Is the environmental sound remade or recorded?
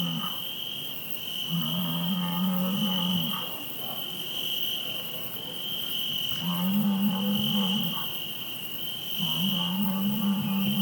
recorded